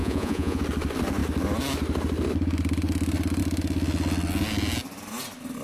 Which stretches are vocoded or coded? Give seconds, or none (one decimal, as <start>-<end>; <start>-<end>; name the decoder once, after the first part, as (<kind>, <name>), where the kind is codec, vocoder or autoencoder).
0.0-0.6 (vocoder, Vocos)